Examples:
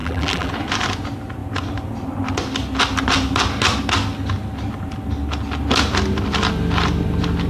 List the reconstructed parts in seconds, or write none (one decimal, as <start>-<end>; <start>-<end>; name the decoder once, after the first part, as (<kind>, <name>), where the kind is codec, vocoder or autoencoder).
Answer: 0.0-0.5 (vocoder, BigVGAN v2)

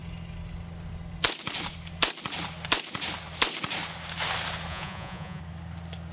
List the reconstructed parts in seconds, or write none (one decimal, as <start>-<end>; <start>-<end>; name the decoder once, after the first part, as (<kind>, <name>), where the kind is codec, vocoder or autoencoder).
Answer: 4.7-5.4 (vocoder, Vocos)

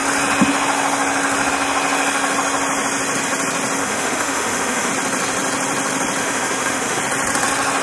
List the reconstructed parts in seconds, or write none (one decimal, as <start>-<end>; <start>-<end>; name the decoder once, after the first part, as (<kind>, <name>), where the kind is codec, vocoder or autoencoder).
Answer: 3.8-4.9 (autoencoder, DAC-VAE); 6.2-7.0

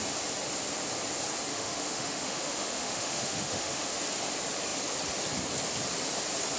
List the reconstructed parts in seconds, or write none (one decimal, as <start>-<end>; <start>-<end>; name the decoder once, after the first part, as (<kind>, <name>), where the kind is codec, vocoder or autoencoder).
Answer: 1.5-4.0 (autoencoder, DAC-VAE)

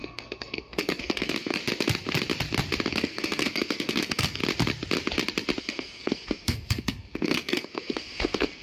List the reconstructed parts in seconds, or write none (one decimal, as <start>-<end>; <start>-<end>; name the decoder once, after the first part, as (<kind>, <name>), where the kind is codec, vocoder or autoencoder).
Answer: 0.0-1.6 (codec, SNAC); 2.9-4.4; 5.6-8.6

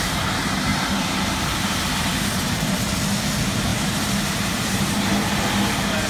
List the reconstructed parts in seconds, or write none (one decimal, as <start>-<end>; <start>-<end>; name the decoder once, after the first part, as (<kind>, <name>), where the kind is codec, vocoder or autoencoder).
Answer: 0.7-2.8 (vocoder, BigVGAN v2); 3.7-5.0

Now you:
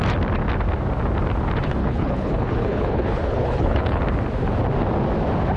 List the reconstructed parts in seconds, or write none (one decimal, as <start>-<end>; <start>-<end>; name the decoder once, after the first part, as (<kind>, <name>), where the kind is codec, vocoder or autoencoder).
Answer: 1.8-4.0 (codec, HILCodec)